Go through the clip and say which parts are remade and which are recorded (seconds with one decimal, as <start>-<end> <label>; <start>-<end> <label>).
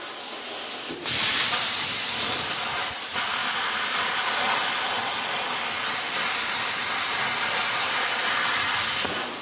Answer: 0.0-8.5 recorded; 8.5-9.4 remade